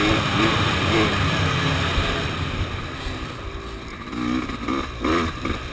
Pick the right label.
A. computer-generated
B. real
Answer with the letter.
B